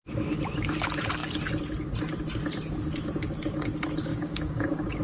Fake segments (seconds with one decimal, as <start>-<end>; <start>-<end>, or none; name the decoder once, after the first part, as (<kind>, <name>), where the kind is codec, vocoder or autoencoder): 4.1-5.0 (codec, DAC)